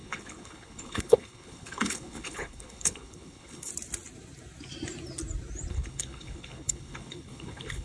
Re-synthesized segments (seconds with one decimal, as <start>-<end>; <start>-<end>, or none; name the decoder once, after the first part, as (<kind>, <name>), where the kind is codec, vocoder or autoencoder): 0.0-3.7 (codec, HILCodec); 5.7-7.8